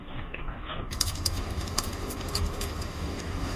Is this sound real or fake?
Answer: fake